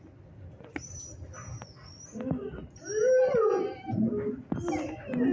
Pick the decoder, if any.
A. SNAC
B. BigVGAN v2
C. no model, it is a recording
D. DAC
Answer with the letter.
C